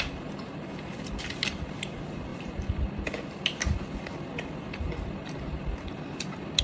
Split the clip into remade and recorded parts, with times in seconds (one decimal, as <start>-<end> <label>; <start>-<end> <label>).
0.0-6.6 recorded